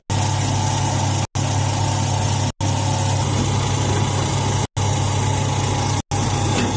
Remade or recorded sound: recorded